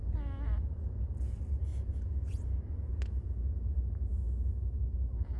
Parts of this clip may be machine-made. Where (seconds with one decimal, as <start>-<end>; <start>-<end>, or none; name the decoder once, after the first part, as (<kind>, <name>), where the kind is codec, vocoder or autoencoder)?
4.1-4.8 (autoencoder, DAC-VAE)